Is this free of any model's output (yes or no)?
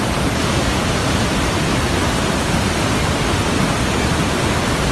yes